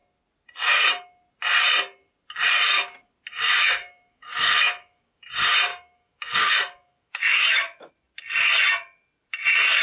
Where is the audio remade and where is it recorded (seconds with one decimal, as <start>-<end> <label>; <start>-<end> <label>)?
0.0-3.8 recorded; 3.8-5.3 remade; 5.3-5.7 recorded; 5.7-7.9 remade; 7.9-9.8 recorded